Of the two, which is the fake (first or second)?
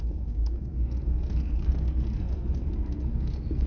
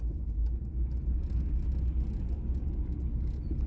first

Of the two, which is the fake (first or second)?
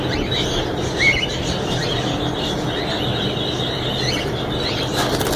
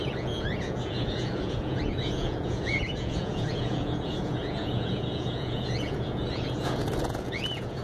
second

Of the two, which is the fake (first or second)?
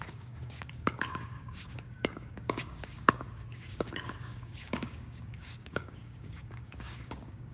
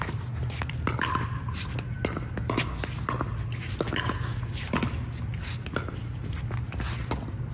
first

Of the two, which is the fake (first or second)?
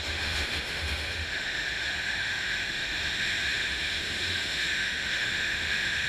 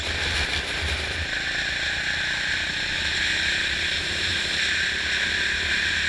first